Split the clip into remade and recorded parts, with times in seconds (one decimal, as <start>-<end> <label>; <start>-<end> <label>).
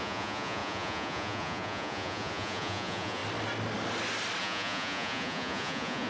0.0-3.2 remade; 3.2-4.4 recorded; 4.4-6.1 remade